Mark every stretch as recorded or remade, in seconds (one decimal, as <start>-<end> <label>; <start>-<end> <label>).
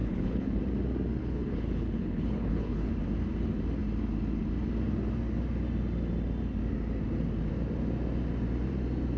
0.0-0.6 remade; 0.6-1.2 recorded; 1.2-2.9 remade; 2.9-9.2 recorded